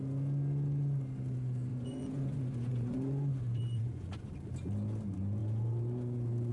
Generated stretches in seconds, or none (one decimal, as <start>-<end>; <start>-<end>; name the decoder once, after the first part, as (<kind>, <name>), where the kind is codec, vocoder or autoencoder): 1.7-4.3 (vocoder, Vocos)

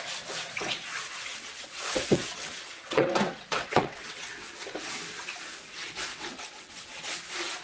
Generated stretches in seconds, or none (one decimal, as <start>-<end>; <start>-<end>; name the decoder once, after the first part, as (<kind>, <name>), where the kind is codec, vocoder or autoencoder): 1.3-4.5 (vocoder, WaveNeXt); 6.1-7.0

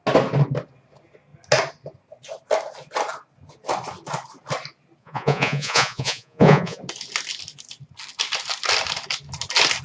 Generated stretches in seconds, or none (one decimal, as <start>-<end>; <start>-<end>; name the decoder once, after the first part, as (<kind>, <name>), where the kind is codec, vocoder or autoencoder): 5.0-6.8 (vocoder, Vocos)

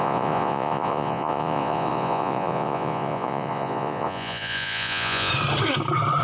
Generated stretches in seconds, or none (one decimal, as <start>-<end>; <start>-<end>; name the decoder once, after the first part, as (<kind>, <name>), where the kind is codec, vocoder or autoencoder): 0.0-5.3 (vocoder, Vocos)

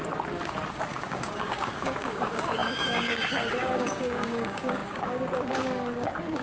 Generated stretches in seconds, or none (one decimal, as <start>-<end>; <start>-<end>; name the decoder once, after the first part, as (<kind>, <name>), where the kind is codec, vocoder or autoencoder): 0.7-6.4 (codec, DAC)

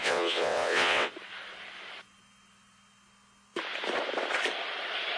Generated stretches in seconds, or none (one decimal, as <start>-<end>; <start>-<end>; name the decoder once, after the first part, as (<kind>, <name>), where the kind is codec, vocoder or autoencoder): 0.0-1.1 (vocoder, WaveNeXt)

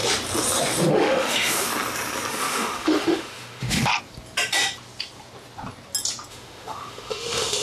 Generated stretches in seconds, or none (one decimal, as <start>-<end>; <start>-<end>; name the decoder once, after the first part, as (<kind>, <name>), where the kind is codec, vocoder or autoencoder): 0.9-1.7 (autoencoder, DAC-VAE); 2.3-3.9; 6.3-7.6

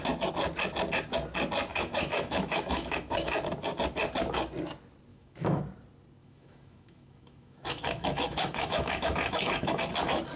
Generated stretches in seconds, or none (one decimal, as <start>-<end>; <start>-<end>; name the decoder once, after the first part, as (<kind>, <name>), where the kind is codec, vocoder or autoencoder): 1.7-3.4 (autoencoder, DAC-VAE); 5.1-5.6; 6.2-9.8